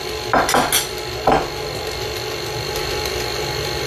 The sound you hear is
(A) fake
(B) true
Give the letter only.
B